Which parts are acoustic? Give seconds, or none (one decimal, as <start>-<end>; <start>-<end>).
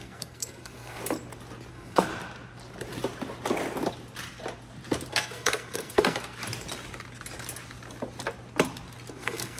1.0-1.7; 2.1-5.1; 6.4-9.1